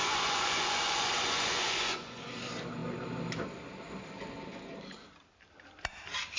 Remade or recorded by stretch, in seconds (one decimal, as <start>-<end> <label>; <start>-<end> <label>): 0.0-2.3 remade; 2.3-6.4 recorded